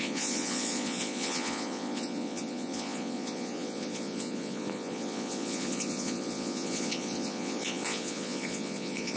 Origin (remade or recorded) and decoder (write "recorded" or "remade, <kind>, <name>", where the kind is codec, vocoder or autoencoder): remade, vocoder, Vocos